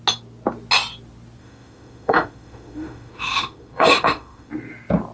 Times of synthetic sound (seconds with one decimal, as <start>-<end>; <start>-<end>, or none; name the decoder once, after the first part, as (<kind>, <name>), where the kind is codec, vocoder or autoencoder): 1.4-4.5 (autoencoder, DAC-VAE)